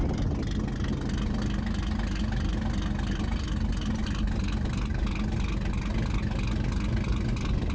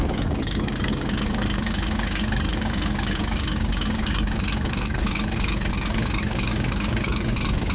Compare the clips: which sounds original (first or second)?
first